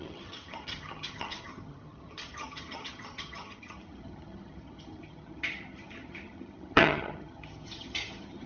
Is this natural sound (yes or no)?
no